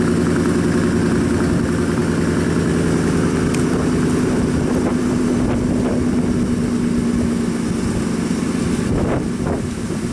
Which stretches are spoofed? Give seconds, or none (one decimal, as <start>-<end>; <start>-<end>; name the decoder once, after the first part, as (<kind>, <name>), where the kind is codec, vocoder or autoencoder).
none